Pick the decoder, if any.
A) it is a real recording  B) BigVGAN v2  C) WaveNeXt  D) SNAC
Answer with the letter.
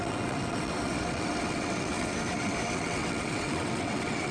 C